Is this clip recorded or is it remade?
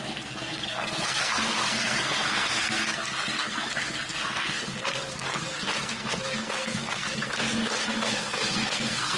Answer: remade